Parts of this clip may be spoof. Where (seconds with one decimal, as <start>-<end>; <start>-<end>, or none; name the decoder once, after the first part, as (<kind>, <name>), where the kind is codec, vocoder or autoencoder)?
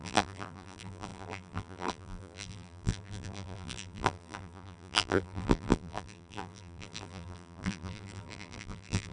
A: 0.0-9.1 (vocoder, BigVGAN v2)